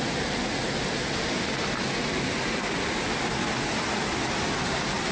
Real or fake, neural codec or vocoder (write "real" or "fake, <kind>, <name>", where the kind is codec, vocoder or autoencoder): real